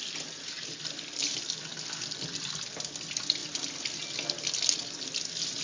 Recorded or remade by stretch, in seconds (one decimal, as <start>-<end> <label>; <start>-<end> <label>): 0.0-5.6 recorded